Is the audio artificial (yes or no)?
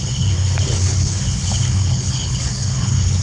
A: yes